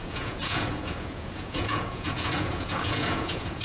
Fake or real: fake